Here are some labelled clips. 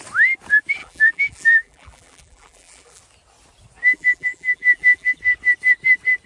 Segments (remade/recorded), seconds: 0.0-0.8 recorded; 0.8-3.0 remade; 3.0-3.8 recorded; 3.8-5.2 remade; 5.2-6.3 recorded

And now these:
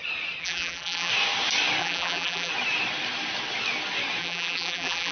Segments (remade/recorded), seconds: 0.0-0.4 recorded; 0.4-1.1 remade; 1.1-1.8 recorded; 1.8-2.5 remade; 2.5-4.2 recorded; 4.2-5.1 remade

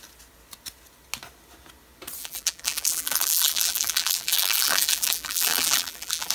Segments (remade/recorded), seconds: 0.0-2.2 recorded; 2.2-6.3 remade

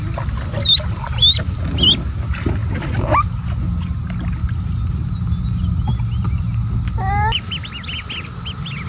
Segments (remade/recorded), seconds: 0.0-8.9 recorded

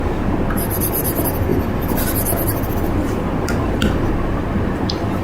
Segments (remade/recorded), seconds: 0.0-5.2 recorded

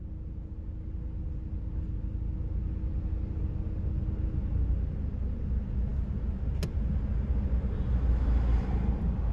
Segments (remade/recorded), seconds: 0.0-9.3 recorded

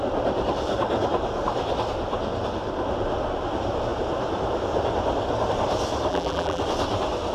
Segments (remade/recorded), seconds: 0.0-6.1 recorded; 6.1-6.6 remade; 6.6-7.3 recorded

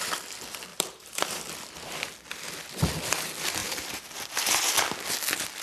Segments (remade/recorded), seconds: 0.0-0.7 recorded; 0.7-1.4 remade; 1.4-3.6 recorded; 3.6-4.1 remade; 4.1-5.6 recorded